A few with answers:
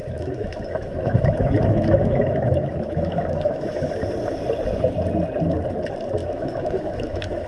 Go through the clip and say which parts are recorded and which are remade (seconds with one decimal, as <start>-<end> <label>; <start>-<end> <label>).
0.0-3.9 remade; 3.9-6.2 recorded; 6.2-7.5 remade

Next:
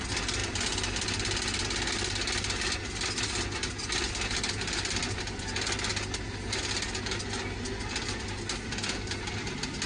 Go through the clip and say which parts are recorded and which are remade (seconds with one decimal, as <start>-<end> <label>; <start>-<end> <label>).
0.0-9.9 recorded

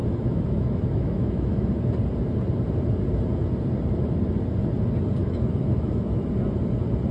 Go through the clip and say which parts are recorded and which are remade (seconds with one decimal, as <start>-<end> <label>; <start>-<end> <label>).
0.0-1.7 remade; 1.7-5.2 recorded; 5.2-6.3 remade; 6.3-7.1 recorded